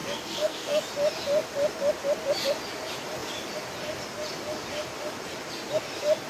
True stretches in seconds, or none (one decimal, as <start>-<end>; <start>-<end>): 0.8-6.3